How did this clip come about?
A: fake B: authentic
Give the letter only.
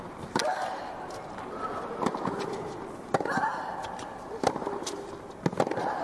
B